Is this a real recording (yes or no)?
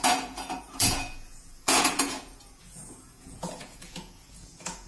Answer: no